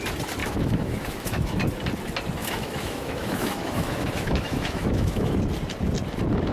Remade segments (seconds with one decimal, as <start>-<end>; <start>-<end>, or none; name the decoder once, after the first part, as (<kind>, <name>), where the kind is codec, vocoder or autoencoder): 0.4-1.6 (autoencoder, DAC-VAE); 2.4-5.4